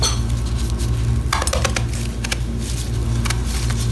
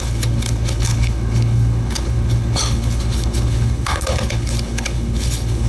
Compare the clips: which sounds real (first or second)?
first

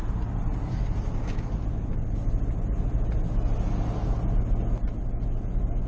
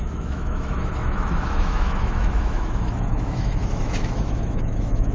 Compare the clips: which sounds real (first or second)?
first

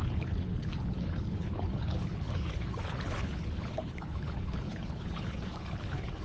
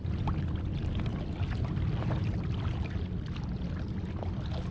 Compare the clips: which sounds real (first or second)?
second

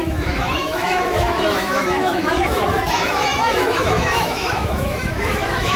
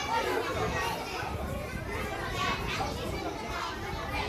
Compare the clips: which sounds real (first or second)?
second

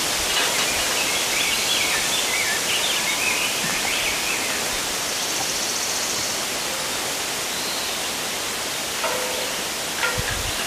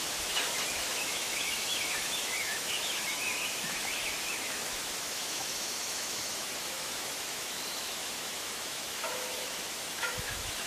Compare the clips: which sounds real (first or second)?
first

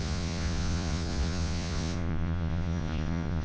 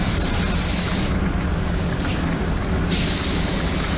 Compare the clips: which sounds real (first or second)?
second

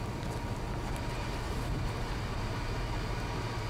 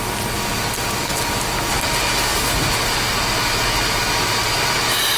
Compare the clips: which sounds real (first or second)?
second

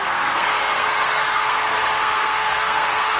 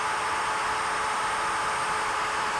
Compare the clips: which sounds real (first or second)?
second